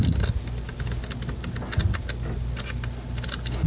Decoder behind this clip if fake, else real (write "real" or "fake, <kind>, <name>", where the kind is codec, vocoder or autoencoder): real